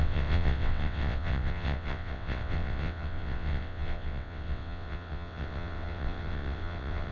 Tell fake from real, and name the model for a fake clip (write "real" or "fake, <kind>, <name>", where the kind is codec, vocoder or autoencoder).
fake, vocoder, WaveNeXt